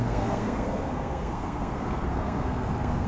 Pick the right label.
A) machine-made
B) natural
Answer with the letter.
A